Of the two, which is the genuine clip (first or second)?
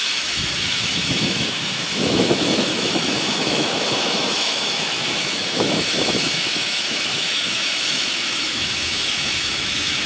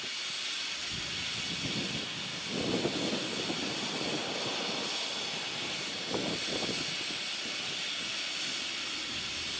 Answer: second